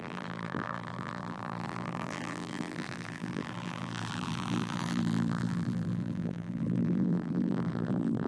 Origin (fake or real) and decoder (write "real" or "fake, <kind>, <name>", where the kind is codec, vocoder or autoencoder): fake, vocoder, BigVGAN v2